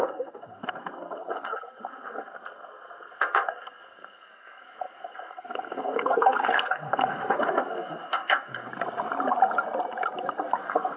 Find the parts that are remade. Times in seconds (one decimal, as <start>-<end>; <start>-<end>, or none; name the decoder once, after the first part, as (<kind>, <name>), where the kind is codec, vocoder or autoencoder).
0.0-8.7 (codec, SNAC); 10.6-11.0